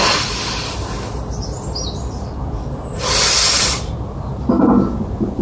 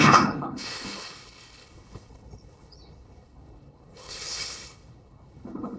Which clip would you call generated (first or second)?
second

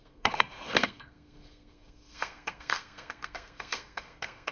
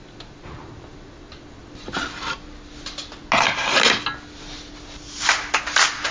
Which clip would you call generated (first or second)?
first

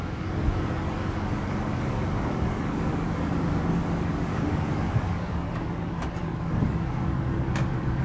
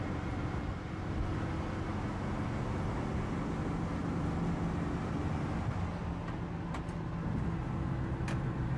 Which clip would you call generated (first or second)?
first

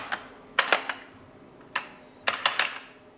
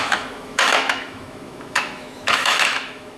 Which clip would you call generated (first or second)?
second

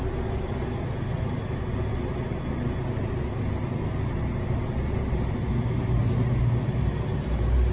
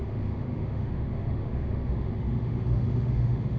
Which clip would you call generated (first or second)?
second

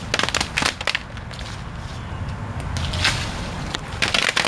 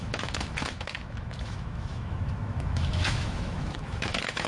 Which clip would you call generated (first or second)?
second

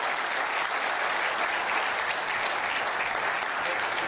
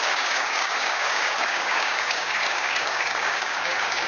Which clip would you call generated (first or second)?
second